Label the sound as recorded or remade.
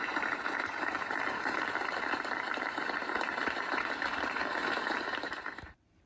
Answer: remade